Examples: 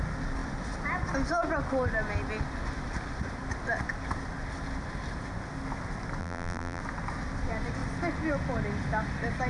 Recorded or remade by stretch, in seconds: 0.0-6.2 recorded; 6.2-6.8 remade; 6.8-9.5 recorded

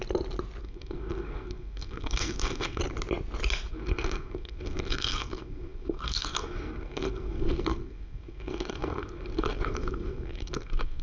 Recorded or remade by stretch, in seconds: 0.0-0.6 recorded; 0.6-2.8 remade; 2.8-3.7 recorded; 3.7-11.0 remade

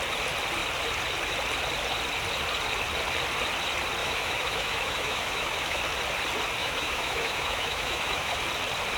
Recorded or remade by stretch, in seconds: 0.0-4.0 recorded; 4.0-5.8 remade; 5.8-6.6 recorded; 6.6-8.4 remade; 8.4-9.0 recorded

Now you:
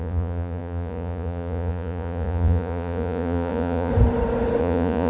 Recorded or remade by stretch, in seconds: 0.0-3.9 remade; 3.9-4.6 recorded; 4.6-5.1 remade